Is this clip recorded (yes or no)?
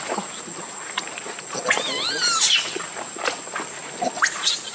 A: yes